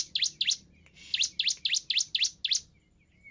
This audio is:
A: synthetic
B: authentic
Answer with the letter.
B